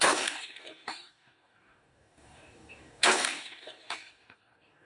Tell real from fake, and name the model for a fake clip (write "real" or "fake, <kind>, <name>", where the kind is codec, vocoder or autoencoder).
fake, codec, DAC